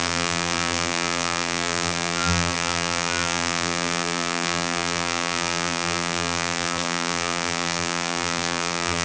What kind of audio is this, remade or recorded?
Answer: remade